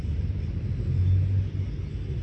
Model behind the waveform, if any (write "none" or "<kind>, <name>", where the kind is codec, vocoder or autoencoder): none